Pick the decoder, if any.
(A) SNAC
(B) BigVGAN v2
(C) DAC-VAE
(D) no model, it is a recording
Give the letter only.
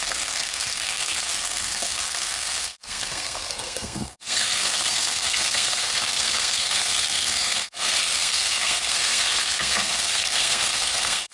A